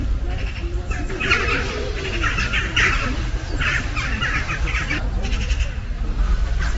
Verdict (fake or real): fake